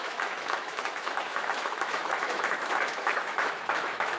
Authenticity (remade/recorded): remade